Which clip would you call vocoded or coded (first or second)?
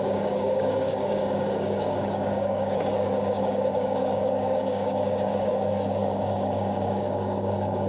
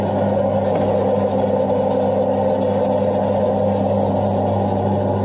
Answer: first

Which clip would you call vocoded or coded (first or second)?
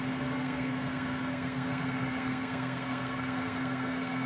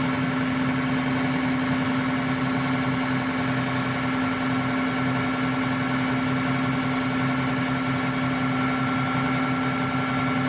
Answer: first